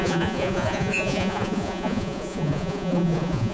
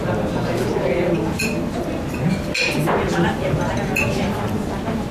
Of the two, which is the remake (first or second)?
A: first